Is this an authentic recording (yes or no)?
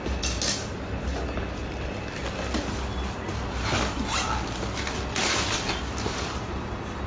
yes